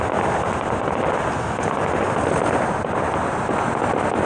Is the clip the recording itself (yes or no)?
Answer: yes